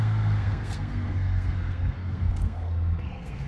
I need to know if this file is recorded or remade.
remade